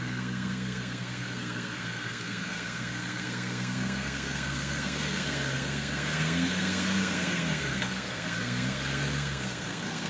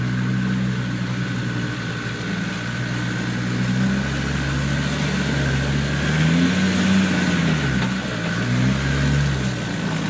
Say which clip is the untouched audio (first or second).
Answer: second